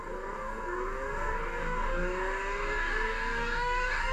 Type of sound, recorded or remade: remade